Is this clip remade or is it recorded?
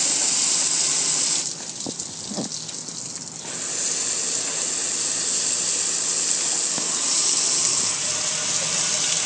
recorded